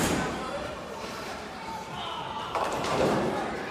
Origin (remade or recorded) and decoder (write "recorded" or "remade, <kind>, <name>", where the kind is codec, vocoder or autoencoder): remade, vocoder, BigVGAN v2